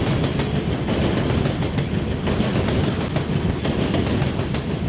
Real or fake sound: real